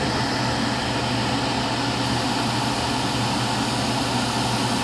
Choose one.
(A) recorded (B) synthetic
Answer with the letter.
A